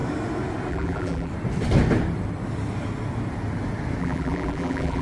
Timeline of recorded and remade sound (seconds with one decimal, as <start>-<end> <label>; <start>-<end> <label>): 0.0-0.7 recorded; 0.7-1.3 remade; 1.3-4.0 recorded; 4.0-5.0 remade